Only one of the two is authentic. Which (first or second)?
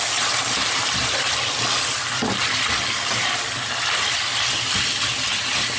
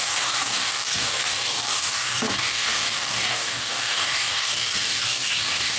first